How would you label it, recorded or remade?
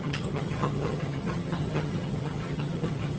remade